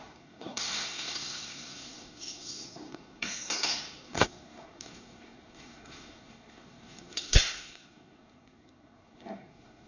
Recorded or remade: remade